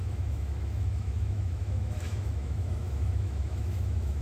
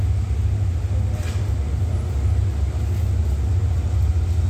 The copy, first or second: first